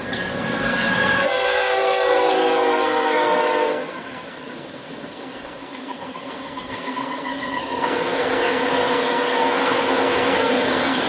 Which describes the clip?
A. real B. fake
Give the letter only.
B